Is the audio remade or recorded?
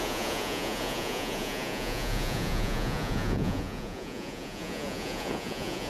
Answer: remade